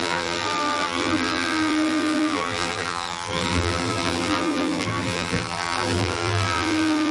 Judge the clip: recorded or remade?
remade